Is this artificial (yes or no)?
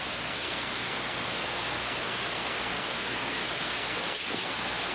yes